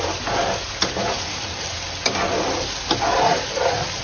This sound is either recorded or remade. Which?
recorded